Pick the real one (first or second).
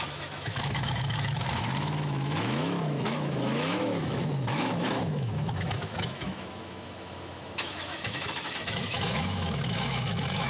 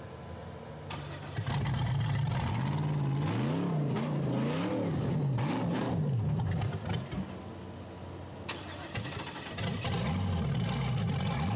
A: second